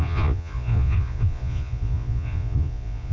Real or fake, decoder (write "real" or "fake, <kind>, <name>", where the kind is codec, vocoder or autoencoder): fake, vocoder, Vocos